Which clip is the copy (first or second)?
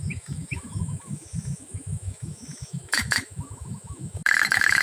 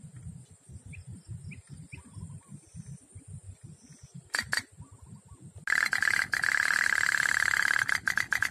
first